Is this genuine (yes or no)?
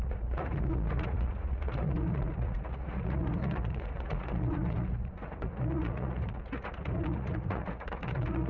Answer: no